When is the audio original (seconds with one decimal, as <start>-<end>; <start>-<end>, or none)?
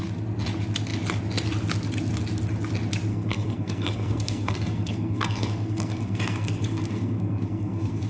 0.0-3.1